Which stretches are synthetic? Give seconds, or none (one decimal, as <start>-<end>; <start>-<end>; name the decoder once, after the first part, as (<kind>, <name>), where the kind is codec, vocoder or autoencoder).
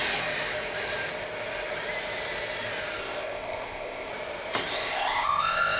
3.0-4.1 (codec, ZipCodec); 4.7-5.8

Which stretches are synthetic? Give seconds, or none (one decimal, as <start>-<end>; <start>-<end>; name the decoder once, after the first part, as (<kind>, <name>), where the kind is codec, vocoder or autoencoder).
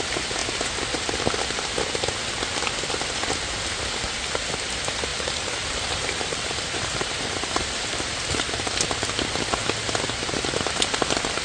5.1-8.6 (vocoder, BigVGAN v2)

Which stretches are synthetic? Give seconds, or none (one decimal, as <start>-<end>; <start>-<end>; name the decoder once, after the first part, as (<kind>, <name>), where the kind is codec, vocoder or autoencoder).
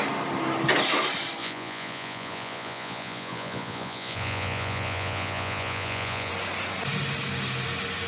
1.4-6.3 (vocoder, Vocos)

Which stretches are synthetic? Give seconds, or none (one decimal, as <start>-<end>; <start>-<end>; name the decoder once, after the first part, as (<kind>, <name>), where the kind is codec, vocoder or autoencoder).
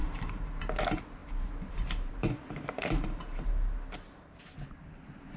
0.0-0.6 (vocoder, BigVGAN v2); 1.2-4.4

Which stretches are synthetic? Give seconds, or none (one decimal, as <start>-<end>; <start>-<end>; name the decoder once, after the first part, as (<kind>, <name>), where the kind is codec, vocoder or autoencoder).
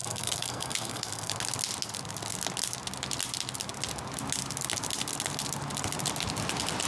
0.0-1.3 (codec, SNAC)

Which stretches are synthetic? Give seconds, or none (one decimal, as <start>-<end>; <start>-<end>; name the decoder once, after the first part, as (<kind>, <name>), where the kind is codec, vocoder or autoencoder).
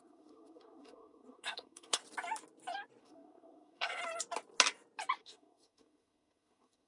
0.0-2.0 (codec, SNAC); 3.0-4.0; 5.2-6.9